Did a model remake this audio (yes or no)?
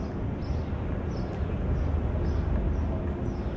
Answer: no